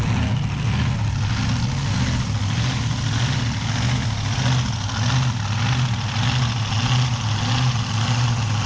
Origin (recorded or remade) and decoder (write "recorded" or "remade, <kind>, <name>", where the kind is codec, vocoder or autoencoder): recorded